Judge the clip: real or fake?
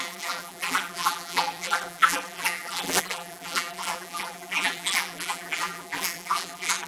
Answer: fake